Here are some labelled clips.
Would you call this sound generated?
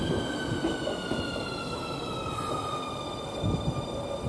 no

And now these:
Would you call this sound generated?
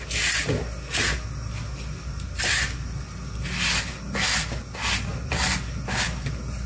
no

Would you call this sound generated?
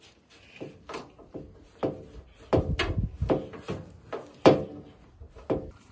no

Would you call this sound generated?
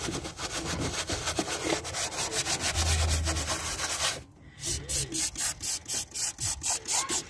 no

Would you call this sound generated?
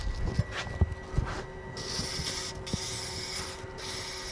no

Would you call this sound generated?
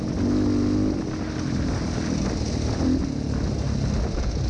no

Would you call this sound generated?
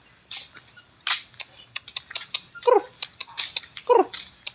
no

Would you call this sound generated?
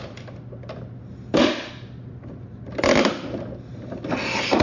no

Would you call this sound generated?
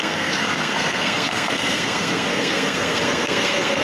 yes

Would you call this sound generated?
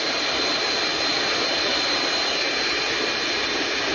no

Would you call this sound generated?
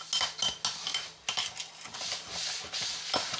no